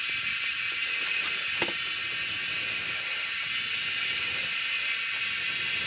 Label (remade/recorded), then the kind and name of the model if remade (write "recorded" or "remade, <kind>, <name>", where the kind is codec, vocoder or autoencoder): recorded